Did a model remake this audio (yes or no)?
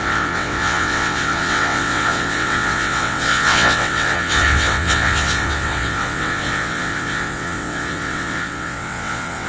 yes